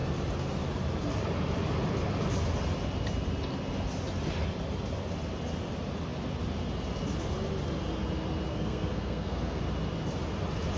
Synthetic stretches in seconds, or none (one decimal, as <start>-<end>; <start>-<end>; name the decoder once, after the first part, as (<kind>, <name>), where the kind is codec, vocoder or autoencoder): 8.5-9.6 (codec, SNAC)